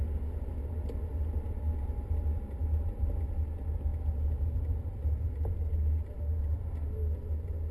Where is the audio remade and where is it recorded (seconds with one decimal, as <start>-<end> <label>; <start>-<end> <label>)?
0.0-7.7 recorded